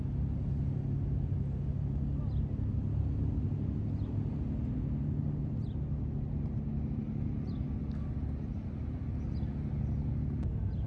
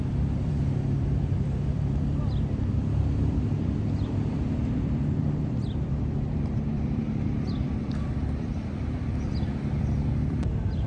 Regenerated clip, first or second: second